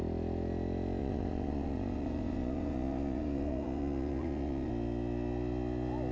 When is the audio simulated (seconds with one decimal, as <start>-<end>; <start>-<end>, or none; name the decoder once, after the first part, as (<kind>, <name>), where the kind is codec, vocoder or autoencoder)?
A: 1.0-4.7 (vocoder, Vocos)

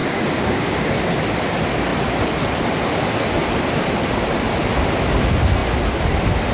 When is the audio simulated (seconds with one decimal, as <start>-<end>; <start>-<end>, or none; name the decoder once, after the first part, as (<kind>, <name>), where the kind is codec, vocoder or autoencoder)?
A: 0.0-0.7 (codec, DAC)

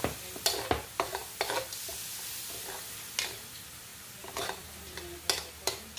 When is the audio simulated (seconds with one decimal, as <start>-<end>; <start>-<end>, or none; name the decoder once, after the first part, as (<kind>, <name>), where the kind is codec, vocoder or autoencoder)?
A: none

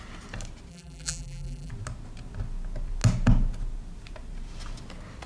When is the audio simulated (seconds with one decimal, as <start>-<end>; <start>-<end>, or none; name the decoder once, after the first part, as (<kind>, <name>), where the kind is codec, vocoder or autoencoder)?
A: 0.7-1.7 (vocoder, BigVGAN v2)

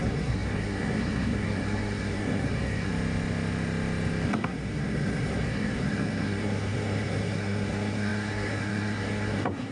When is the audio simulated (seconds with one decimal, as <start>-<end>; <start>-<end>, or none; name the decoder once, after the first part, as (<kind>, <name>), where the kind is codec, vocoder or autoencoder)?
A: 0.0-2.9 (codec, SNAC); 4.3-9.7

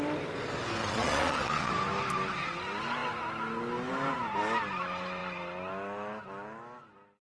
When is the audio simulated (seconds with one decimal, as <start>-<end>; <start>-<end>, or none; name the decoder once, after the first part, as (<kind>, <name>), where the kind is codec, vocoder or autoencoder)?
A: 0.8-1.7 (vocoder, Vocos)